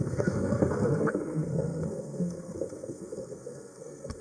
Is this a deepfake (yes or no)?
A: yes